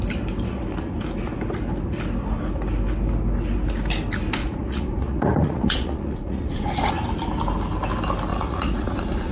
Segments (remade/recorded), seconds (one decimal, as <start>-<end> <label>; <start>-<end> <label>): 0.0-4.4 recorded; 4.4-6.9 remade; 6.9-8.3 recorded; 8.3-9.3 remade